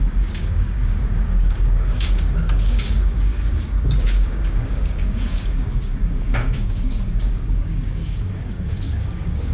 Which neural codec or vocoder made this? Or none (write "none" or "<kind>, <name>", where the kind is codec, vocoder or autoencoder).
codec, DAC